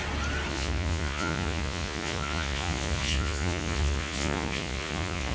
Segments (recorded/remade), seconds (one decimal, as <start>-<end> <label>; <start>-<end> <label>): 0.0-0.5 recorded; 0.5-5.3 remade